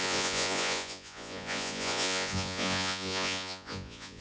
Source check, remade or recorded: remade